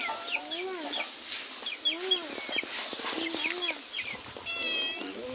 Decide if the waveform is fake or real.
real